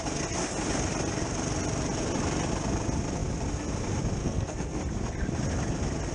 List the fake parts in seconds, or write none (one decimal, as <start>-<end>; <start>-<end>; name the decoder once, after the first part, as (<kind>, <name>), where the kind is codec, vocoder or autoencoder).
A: 4.2-4.8 (codec, SNAC)